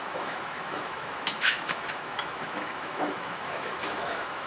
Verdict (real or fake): fake